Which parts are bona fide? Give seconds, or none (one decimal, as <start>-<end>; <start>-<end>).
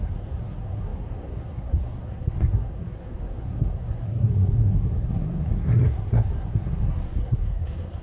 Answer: none